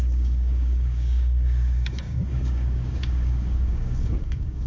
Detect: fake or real fake